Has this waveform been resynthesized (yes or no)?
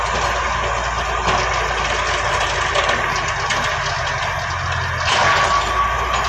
no